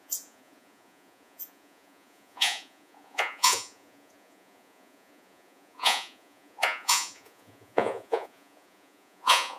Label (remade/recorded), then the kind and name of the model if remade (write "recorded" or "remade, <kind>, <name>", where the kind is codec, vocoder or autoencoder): remade, vocoder, Vocos